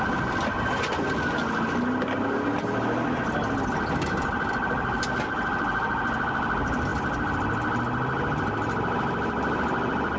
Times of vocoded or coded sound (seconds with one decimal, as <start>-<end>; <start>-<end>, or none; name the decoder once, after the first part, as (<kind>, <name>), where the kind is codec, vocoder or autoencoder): none

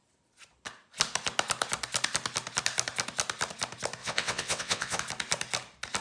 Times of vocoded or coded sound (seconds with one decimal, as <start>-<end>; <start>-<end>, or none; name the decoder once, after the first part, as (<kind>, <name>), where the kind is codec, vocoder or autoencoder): 4.0-5.0 (vocoder, WaveNeXt)

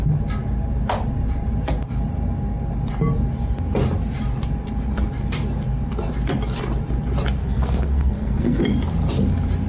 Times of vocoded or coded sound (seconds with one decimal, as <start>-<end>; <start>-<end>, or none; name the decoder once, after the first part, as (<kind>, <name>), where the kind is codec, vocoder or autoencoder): 7.4-8.6 (codec, SNAC)

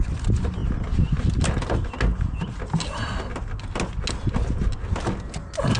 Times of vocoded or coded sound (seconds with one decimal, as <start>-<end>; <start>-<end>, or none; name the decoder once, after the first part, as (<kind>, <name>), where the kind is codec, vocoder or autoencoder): none